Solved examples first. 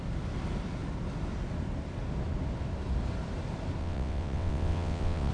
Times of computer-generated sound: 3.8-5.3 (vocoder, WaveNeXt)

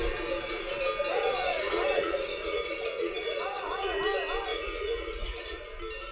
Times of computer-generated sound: 1.1-4.0 (vocoder, Vocos); 4.5-5.6